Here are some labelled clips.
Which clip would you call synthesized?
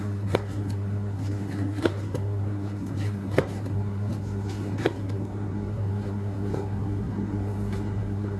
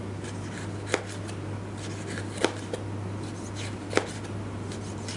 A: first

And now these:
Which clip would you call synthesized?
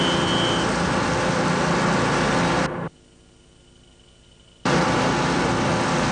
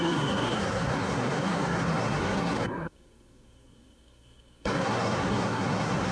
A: second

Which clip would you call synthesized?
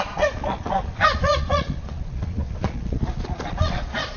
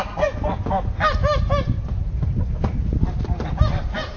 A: first